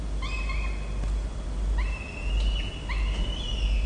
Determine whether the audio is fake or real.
real